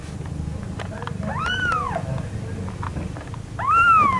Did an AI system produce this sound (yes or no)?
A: no